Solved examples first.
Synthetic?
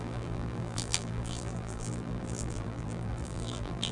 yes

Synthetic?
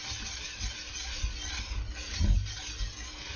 no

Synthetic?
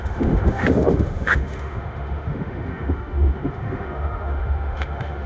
yes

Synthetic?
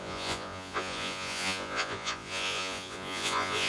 yes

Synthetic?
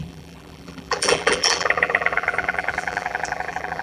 yes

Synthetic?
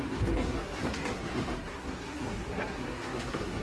yes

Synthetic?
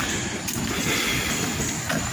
no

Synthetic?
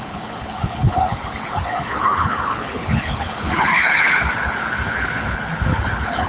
yes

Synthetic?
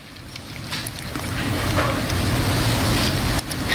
no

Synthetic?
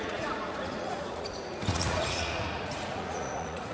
yes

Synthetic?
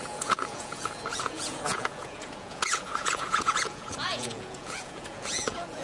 yes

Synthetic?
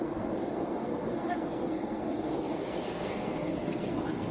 yes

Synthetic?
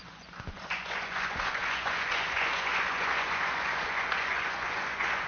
yes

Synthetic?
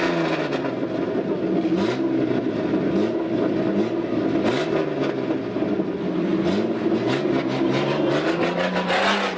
no